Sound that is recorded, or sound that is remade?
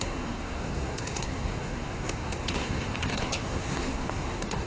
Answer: remade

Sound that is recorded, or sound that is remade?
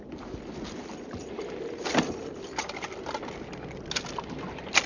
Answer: recorded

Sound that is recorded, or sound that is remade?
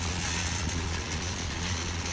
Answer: remade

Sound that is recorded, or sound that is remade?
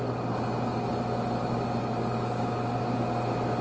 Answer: recorded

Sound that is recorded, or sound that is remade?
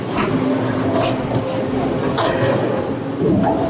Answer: recorded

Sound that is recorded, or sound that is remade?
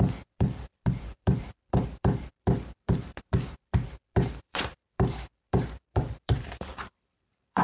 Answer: remade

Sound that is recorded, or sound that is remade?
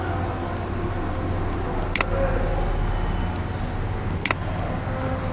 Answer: recorded